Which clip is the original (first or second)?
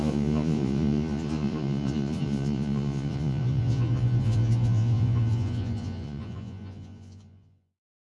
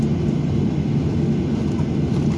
second